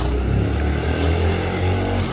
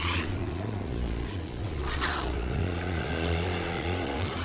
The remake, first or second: second